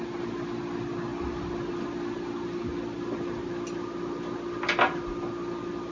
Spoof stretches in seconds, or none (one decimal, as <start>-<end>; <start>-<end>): none